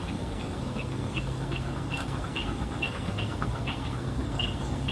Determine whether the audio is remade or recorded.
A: remade